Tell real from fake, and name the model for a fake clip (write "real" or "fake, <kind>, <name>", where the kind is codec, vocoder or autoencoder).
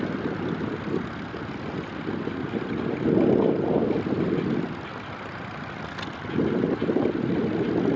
real